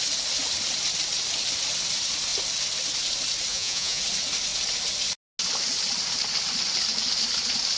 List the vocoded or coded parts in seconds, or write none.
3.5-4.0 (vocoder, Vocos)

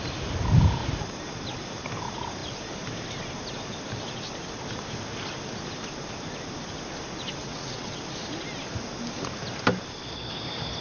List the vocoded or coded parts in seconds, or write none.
7.4-8.0 (vocoder, WaveNeXt)

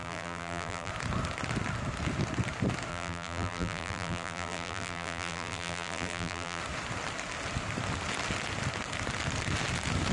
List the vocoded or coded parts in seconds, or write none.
0.0-0.9 (vocoder, BigVGAN v2); 2.9-6.6

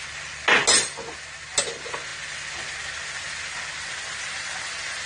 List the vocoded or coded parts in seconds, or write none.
none

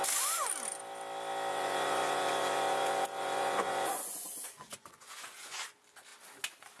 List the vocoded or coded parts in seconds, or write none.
1.5-5.6 (vocoder, Vocos)